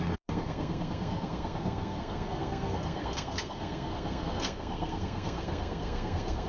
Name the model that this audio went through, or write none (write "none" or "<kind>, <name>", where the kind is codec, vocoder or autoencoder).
codec, SNAC